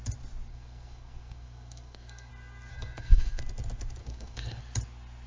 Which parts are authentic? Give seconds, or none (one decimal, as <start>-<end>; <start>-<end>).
0.0-0.5; 2.3-2.7; 3.4-4.0; 4.6-5.3